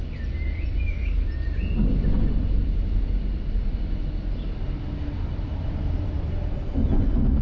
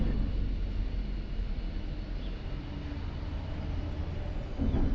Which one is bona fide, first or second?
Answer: second